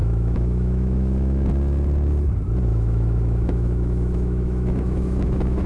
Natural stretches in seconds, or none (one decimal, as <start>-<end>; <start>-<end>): 1.5-2.7